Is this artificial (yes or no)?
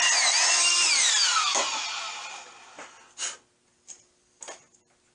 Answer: no